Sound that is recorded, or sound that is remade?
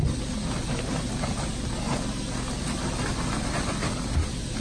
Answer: recorded